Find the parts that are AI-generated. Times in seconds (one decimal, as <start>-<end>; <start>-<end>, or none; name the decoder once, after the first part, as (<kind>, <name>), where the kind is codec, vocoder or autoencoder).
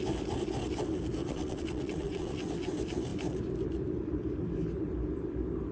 1.2-2.5 (vocoder, WaveNeXt)